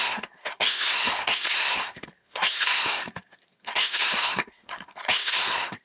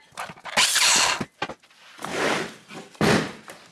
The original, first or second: second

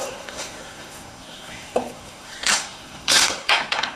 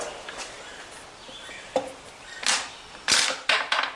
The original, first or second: second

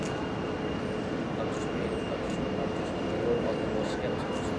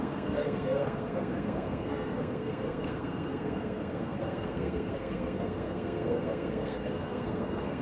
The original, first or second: first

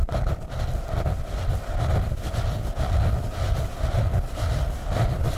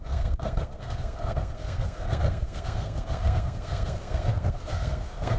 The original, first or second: first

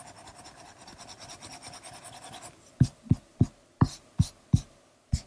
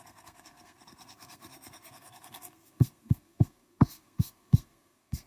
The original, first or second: first